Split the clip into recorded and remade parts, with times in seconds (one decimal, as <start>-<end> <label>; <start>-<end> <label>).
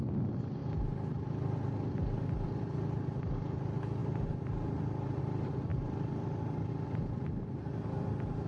0.0-8.5 recorded